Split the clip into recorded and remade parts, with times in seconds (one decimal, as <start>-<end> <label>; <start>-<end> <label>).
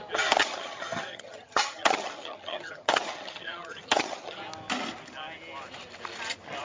0.0-0.4 recorded; 0.4-4.4 remade; 4.4-6.6 recorded